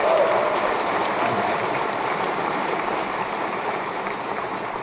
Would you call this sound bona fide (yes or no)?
no